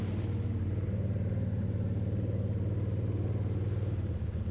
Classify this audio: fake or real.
real